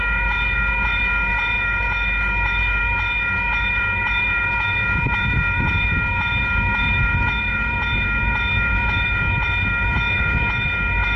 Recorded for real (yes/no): no